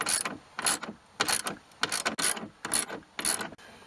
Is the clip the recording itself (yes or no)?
yes